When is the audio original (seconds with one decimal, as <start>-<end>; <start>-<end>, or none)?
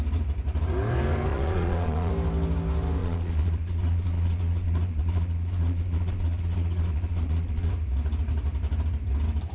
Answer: 0.0-1.3; 2.1-3.0; 7.7-9.5